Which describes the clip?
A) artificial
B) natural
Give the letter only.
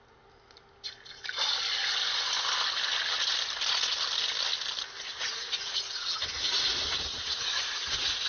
B